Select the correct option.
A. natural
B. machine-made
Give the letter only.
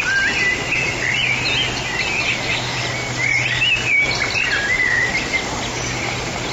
A